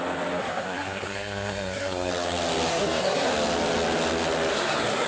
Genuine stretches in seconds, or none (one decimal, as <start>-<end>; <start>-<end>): 0.0-0.4; 2.1-2.7; 3.3-4.5